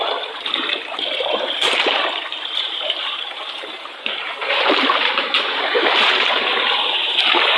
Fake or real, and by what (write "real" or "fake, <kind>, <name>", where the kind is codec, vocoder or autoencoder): fake, vocoder, BigVGAN v2